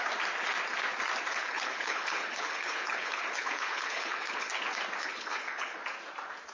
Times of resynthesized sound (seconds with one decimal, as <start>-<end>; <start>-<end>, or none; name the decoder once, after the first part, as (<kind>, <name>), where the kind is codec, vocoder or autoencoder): 1.3-4.5 (codec, HILCodec); 5.0-5.8